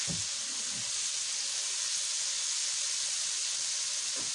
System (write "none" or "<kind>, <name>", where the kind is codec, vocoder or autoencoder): none